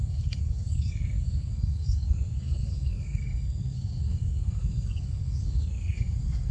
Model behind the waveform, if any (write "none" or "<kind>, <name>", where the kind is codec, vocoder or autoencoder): codec, SNAC